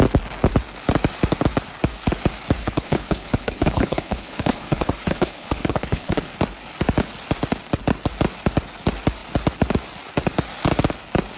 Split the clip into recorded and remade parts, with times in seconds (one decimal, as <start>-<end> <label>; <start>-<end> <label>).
0.0-2.6 recorded; 2.6-6.3 remade; 6.3-11.4 recorded